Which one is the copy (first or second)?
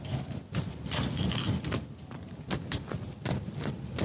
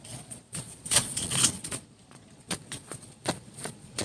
second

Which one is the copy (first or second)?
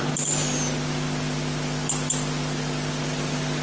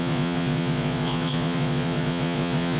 second